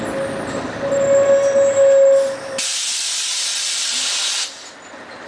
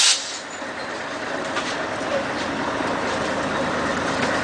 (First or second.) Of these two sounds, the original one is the first